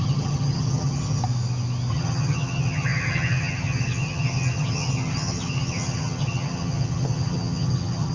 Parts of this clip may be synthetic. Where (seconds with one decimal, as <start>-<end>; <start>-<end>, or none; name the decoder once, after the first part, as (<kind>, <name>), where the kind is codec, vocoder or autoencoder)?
0.0-1.2 (vocoder, HiFi-GAN); 1.9-8.1